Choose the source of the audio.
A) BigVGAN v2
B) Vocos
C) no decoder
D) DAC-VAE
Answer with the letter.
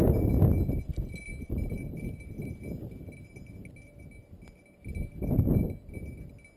C